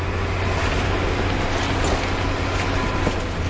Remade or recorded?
recorded